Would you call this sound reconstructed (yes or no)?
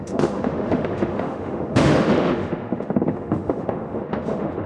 yes